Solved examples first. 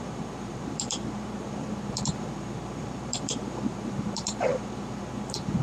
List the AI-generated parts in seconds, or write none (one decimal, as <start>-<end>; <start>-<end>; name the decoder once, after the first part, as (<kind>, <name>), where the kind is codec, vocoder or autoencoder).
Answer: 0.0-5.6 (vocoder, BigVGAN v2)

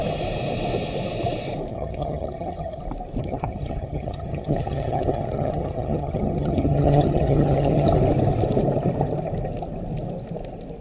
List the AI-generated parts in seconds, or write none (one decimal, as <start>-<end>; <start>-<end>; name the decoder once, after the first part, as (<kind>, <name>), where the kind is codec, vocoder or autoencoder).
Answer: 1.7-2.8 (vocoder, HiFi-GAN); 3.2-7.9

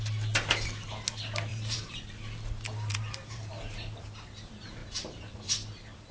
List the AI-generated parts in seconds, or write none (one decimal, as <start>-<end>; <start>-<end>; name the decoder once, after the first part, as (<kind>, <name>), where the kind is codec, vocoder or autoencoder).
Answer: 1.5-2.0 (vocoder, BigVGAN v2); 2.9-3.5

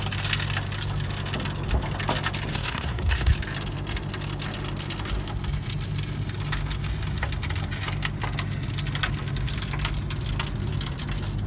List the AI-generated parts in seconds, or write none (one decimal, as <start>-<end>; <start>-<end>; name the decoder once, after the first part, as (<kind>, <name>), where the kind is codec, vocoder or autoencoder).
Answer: 2.5-3.3 (codec, SNAC)

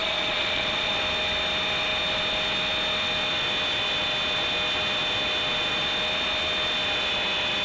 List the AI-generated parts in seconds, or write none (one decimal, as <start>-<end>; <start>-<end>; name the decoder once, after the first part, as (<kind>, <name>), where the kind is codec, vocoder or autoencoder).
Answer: 0.0-0.9 (vocoder, Vocos)

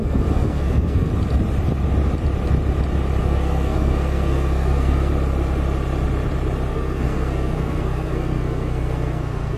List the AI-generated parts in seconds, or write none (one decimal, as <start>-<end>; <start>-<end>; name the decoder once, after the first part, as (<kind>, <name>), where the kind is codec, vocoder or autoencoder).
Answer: 0.0-1.1 (codec, SNAC); 3.2-5.1; 6.7-9.6

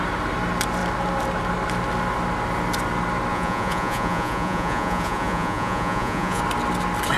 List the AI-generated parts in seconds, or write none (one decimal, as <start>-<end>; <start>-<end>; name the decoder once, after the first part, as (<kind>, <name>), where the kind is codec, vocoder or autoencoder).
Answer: 3.3-6.4 (vocoder, Vocos)

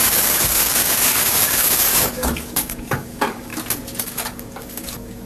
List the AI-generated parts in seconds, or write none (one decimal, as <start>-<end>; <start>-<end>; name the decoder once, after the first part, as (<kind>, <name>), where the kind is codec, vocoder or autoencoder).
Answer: 0.0-3.5 (codec, DAC); 4.0-5.2